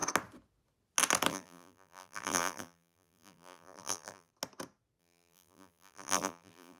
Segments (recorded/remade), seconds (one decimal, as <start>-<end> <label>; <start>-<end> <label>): 0.0-1.3 recorded; 1.3-4.3 remade; 4.3-5.0 recorded; 5.0-6.8 remade